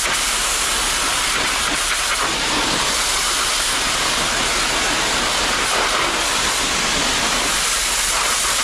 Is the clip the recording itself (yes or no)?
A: yes